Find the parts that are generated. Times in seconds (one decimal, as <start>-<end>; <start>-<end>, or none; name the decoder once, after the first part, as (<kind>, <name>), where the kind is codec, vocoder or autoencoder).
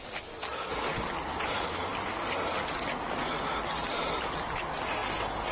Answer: none